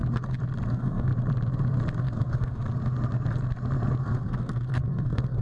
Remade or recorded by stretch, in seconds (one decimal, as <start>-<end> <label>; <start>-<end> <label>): 0.0-0.7 recorded; 0.7-1.1 remade; 1.1-2.0 recorded; 2.0-2.6 remade; 2.6-4.0 recorded; 4.0-5.4 remade